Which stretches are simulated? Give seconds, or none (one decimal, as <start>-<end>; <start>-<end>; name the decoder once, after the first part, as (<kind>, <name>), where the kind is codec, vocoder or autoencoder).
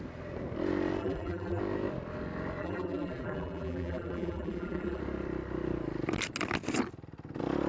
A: 1.0-1.6 (vocoder, BigVGAN v2); 2.6-5.0